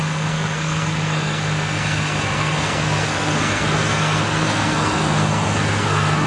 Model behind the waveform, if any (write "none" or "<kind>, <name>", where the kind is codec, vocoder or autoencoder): codec, SNAC